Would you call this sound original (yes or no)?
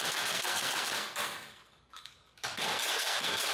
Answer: no